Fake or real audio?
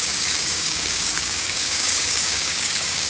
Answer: fake